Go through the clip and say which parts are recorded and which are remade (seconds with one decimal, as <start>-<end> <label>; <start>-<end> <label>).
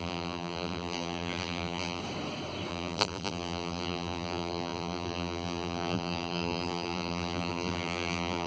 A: 0.0-2.0 remade; 2.0-2.7 recorded; 2.7-8.5 remade